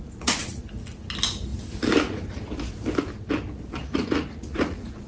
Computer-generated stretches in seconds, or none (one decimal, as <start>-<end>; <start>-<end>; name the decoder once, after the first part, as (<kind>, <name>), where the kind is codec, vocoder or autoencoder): 0.0-0.6 (vocoder, Vocos); 3.8-5.1